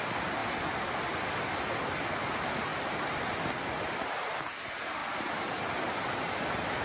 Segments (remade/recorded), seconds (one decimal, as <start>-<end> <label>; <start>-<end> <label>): 0.0-2.7 recorded; 2.7-3.2 remade; 3.2-6.8 recorded